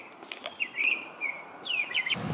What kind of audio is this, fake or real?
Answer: real